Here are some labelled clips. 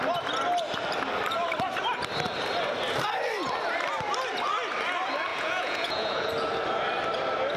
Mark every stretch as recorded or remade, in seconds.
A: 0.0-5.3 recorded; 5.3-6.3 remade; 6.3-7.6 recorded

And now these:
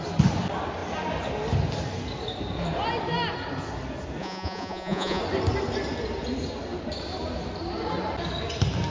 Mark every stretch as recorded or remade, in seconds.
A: 0.0-4.2 recorded; 4.2-5.2 remade; 5.2-8.9 recorded